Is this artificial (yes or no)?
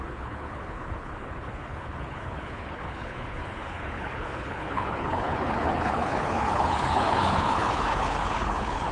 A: yes